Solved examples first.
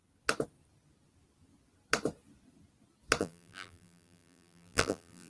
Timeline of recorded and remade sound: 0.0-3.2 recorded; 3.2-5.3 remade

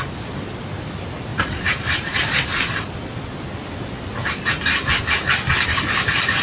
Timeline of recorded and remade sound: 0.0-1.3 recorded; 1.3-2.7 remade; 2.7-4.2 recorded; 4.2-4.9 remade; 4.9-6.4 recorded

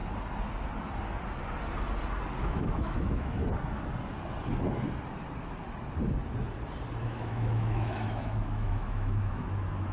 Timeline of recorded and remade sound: 0.0-2.4 recorded; 2.4-3.4 remade; 3.4-7.0 recorded; 7.0-9.9 remade

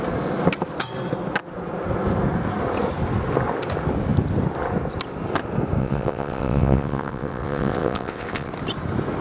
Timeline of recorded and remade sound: 0.0-5.8 recorded; 5.8-8.5 remade; 8.5-9.2 recorded

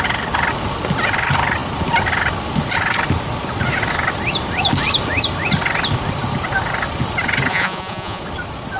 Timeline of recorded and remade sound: 0.0-7.5 recorded; 7.5-8.2 remade; 8.2-8.8 recorded

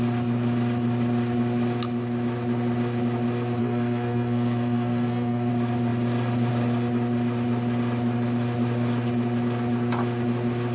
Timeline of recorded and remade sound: 0.0-3.6 recorded; 3.6-5.5 remade; 5.5-10.7 recorded